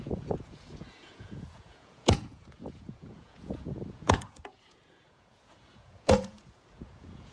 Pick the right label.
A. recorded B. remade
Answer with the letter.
B